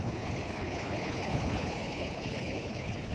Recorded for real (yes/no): no